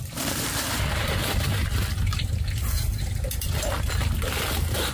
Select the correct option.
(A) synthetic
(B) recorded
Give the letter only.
A